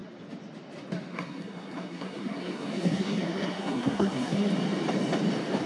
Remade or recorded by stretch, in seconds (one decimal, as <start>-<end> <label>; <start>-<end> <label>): 0.0-1.1 recorded; 1.1-4.5 remade; 4.5-5.7 recorded